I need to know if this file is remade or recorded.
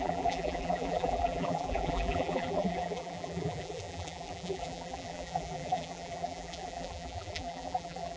remade